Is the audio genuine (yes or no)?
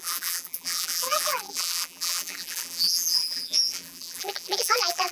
no